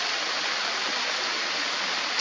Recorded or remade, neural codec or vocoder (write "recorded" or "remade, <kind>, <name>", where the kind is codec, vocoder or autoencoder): recorded